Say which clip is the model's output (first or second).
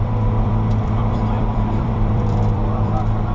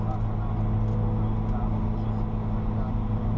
first